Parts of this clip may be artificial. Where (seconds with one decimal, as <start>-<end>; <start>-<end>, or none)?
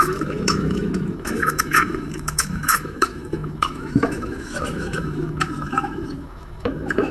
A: 0.0-7.1